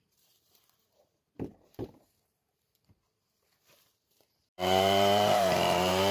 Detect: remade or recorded remade